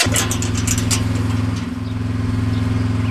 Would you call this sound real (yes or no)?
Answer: yes